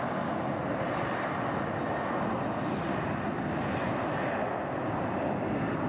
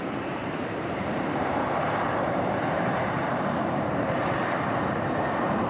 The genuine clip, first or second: first